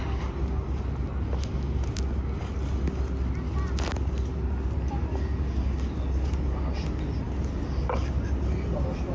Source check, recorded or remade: recorded